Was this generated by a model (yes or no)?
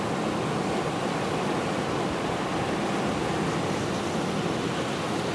no